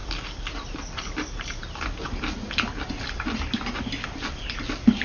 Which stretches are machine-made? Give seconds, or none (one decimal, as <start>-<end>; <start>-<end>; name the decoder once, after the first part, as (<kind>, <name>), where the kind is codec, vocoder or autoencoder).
none